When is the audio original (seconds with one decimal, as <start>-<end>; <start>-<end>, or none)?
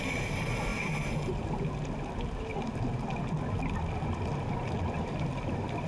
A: 0.0-5.9